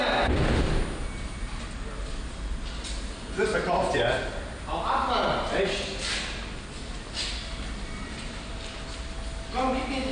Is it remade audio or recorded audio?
recorded